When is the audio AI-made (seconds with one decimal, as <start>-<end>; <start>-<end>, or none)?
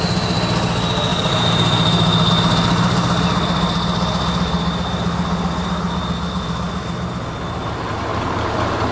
1.1-2.3; 8.1-8.9